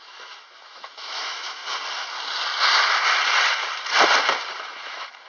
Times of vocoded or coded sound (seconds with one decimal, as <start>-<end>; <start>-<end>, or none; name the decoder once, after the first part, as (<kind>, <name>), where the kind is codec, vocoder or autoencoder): 0.0-1.6 (autoencoder, DAC-VAE); 4.6-5.3